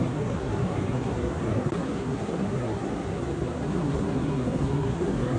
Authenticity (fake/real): fake